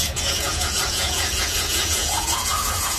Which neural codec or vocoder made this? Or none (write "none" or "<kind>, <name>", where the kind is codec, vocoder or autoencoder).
vocoder, Vocos